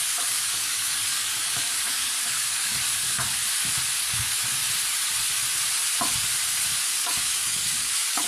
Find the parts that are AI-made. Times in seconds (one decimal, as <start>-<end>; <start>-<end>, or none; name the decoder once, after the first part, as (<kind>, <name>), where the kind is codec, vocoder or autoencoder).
0.0-3.4 (codec, DAC); 4.0-4.6; 6.8-8.3